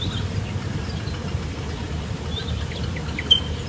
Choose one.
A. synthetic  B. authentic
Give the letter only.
A